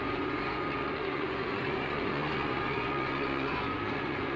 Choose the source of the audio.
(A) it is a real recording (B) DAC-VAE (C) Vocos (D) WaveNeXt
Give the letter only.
C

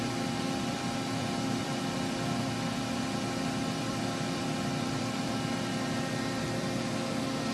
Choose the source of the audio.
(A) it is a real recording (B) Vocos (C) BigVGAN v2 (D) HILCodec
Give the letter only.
C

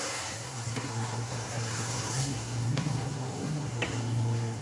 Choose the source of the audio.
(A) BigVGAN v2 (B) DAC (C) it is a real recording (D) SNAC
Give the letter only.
D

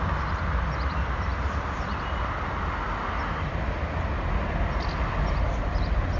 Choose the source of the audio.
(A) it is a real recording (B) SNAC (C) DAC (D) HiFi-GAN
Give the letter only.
A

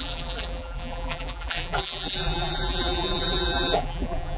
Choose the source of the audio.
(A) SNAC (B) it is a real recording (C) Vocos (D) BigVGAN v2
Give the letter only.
D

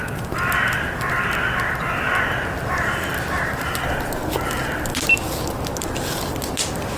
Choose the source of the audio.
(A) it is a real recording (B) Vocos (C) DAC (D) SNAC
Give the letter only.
A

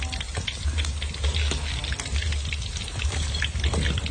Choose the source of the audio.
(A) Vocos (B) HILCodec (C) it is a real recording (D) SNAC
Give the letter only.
C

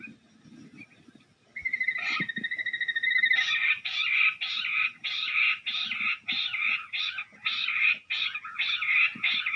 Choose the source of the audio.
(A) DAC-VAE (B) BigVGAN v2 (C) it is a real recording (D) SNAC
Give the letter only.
C